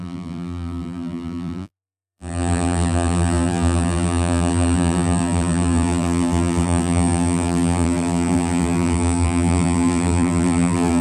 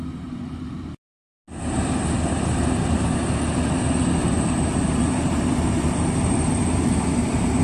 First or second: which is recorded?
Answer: second